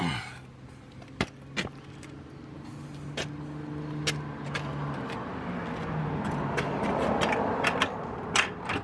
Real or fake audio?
real